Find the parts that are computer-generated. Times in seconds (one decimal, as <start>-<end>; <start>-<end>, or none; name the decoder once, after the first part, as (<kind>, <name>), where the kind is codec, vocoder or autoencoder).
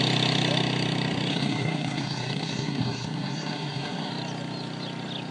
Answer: 1.3-4.1 (codec, SNAC)